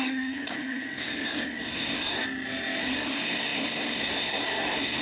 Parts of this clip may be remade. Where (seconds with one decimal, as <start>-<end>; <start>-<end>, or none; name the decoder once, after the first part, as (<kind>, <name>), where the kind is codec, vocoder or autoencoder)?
0.0-2.2 (codec, SNAC); 2.8-5.0